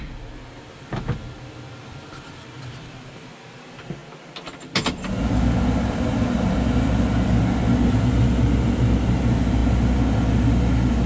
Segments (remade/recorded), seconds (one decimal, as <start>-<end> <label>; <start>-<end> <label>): 0.0-11.1 recorded